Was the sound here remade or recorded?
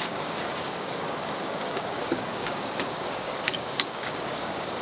remade